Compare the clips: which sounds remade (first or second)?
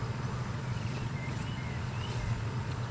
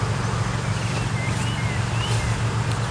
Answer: first